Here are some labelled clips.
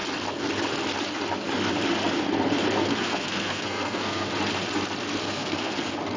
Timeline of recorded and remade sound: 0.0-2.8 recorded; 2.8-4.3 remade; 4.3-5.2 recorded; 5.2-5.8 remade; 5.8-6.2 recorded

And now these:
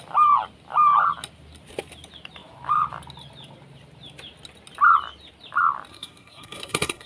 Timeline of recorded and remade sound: 0.0-5.9 recorded; 5.9-7.1 remade

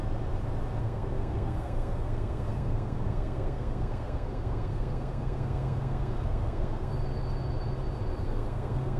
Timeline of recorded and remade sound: 0.0-0.8 recorded; 0.8-6.9 remade; 6.9-8.2 recorded; 8.2-9.0 remade

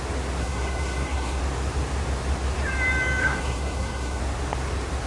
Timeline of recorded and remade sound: 0.0-0.4 recorded; 0.4-1.4 remade; 1.4-3.2 recorded; 3.2-4.2 remade; 4.2-5.1 recorded

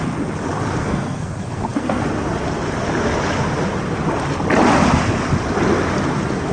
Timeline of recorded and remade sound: 0.0-0.8 recorded; 0.8-2.0 remade; 2.0-6.5 recorded

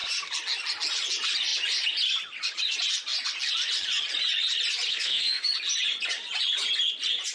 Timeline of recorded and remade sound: 0.0-4.9 recorded; 4.9-5.4 remade; 5.4-7.3 recorded

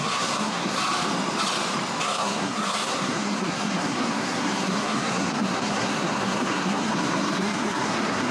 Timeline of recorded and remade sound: 0.0-0.8 remade; 0.8-2.0 recorded; 2.0-8.3 remade